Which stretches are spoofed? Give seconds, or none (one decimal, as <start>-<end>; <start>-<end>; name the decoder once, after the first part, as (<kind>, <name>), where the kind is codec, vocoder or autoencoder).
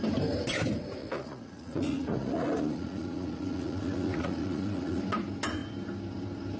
1.0-5.0 (vocoder, Vocos)